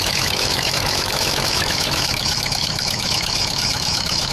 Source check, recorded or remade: remade